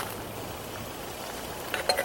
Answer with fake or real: real